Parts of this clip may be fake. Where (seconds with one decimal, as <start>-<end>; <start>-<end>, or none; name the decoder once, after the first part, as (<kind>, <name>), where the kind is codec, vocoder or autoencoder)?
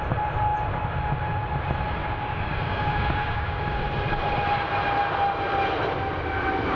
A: 2.0-3.6 (codec, DAC)